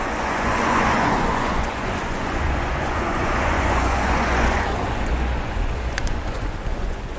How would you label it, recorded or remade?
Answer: remade